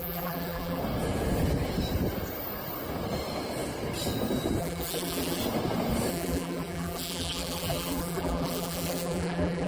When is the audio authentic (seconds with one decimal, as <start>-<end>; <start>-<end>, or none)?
0.8-4.6; 5.4-6.1